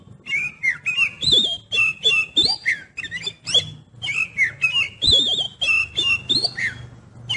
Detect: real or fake real